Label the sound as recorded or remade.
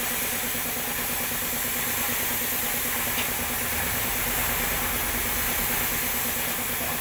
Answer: recorded